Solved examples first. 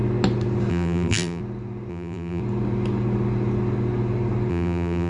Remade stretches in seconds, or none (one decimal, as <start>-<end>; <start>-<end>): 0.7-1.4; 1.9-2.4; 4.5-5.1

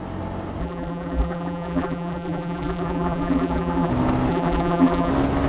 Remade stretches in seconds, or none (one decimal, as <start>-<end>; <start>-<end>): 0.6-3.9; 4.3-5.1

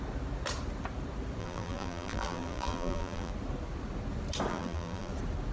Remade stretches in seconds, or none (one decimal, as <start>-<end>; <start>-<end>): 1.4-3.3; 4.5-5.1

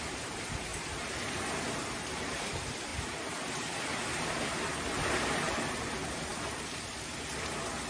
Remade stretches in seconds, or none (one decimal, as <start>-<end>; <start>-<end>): 2.9-5.7; 6.3-7.1

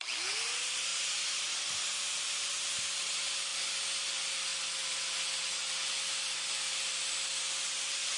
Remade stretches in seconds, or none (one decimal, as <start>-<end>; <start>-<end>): 0.0-0.9; 3.0-3.5; 4.0-4.5; 6.0-8.2

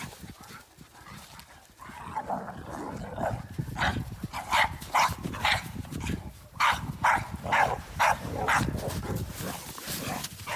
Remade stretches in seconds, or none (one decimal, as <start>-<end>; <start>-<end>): 3.9-8.5

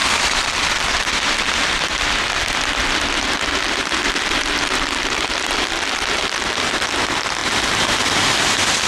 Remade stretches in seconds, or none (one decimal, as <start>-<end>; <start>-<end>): 0.0-2.1

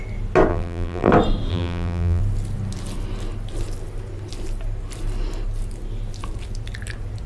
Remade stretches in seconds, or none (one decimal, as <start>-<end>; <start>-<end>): 0.5-1.1; 1.5-2.2